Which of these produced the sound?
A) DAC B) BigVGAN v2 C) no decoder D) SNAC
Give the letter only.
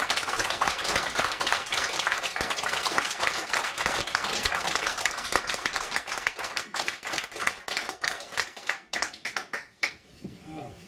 D